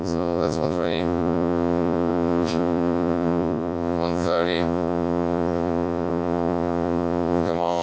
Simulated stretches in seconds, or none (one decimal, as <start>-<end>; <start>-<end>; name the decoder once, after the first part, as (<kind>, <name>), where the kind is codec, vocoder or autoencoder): 0.0-7.8 (vocoder, Vocos)